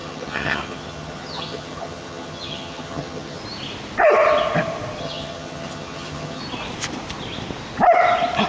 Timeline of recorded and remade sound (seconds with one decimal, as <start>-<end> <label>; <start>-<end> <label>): 0.0-3.4 remade; 3.4-5.0 recorded; 5.0-6.4 remade; 6.4-8.5 recorded